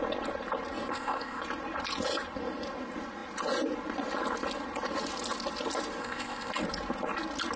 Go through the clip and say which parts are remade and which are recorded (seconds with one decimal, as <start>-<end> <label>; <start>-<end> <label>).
0.0-0.9 recorded; 0.9-1.4 remade; 1.4-6.0 recorded; 6.0-6.5 remade; 6.5-7.6 recorded